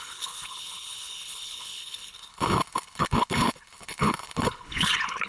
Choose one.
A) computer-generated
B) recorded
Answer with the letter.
A